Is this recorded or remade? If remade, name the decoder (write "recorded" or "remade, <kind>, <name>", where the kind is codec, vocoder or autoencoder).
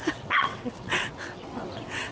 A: remade, vocoder, WaveNeXt